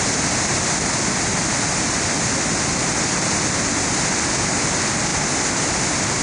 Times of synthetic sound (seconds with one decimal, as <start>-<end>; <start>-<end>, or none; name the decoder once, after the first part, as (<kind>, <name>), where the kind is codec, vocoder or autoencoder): none